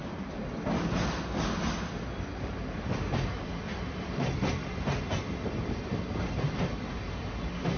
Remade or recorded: recorded